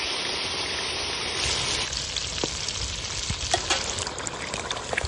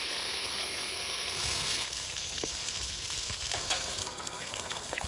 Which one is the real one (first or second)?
first